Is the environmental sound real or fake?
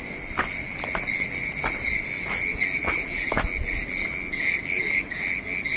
real